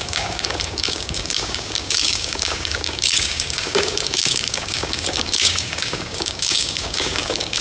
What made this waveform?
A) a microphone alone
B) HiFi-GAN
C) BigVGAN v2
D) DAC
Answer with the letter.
D